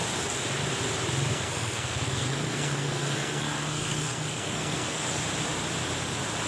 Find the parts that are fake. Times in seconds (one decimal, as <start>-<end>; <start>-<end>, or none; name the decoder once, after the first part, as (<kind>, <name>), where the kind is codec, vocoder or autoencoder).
1.3-5.2 (codec, SNAC)